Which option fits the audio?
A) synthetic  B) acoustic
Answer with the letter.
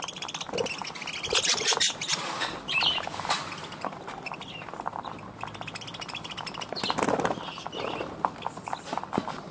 B